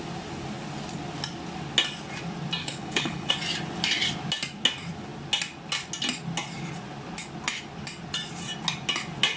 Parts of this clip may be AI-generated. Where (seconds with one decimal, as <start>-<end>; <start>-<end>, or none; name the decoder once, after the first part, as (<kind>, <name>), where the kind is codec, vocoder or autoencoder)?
2.6-3.3 (codec, HILCodec)